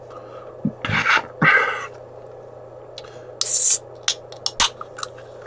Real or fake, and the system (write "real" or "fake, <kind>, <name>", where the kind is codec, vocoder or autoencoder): real